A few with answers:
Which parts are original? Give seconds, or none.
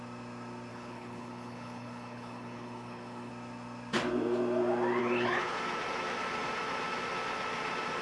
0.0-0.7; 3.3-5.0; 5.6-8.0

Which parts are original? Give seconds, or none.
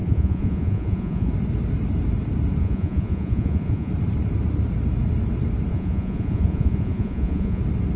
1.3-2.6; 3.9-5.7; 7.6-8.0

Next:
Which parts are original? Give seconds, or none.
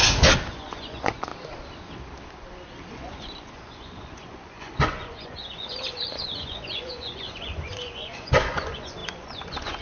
0.0-0.5; 1.3-2.9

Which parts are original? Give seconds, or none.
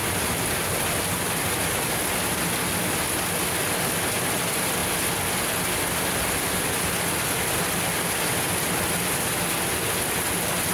2.0-10.7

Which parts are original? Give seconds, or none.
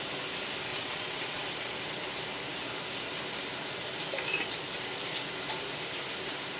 0.0-0.7; 1.4-6.6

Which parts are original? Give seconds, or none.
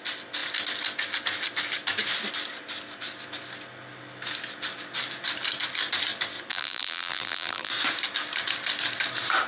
0.0-6.5; 7.7-9.5